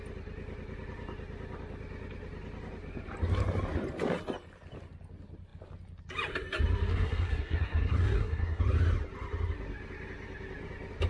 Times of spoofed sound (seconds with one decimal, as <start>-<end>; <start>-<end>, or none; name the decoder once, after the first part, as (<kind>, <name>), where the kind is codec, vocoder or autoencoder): 6.9-8.6 (codec, SNAC)